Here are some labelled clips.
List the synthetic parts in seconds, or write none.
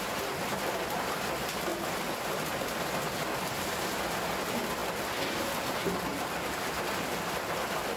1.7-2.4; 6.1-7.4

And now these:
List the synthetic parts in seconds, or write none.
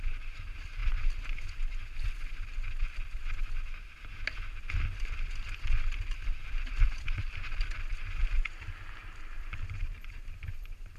7.2-11.0